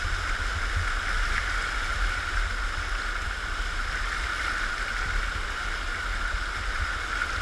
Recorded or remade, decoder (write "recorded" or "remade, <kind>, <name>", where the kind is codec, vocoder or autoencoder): recorded